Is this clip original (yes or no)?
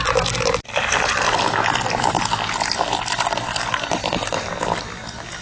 yes